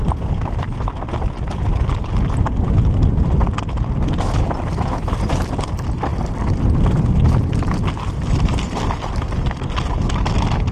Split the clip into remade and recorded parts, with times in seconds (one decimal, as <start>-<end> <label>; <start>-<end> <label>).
0.0-10.7 recorded